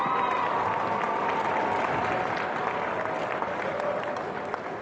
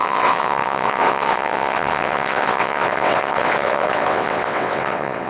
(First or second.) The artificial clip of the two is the second